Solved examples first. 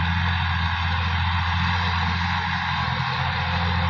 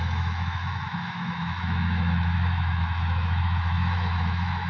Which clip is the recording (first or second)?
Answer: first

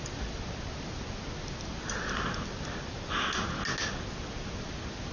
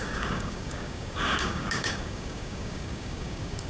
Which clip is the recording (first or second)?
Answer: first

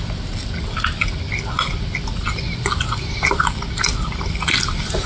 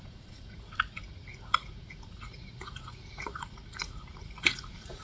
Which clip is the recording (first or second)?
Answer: first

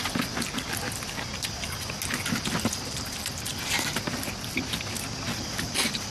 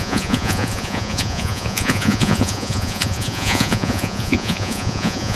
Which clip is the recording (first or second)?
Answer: first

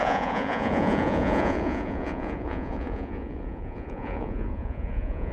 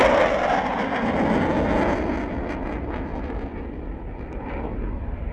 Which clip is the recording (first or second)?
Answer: second